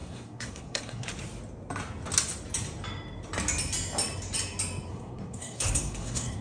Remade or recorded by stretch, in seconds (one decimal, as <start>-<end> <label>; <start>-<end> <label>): 0.0-1.1 remade; 1.1-4.9 recorded; 4.9-6.4 remade